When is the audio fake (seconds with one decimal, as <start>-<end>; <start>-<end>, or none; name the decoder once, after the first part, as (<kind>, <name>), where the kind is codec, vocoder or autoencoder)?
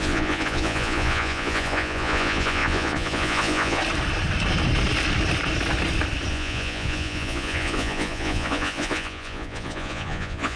0.0-3.8 (vocoder, Vocos); 6.3-10.6